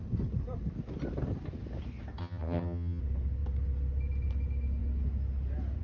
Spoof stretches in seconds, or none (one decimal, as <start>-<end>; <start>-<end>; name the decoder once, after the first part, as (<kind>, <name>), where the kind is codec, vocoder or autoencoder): 2.2-3.0 (vocoder, HiFi-GAN)